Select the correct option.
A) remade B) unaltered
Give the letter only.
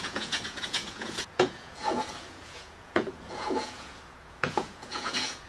A